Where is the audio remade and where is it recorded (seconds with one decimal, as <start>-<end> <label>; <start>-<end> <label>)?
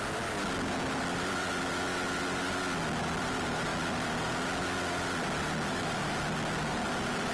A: 0.0-7.3 recorded